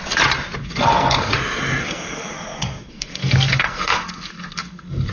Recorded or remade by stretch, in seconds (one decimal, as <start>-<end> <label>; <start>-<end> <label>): 0.0-0.6 recorded; 0.6-1.3 remade; 1.3-1.8 recorded; 1.8-5.1 remade